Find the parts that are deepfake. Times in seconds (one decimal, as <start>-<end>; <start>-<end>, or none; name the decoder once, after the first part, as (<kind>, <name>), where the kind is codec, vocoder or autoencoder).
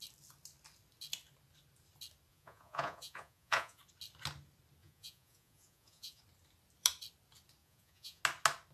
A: 2.3-3.8 (vocoder, Vocos); 4.8-6.2; 7.6-8.2